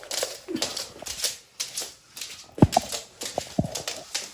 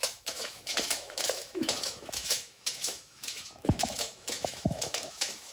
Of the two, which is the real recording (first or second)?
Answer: first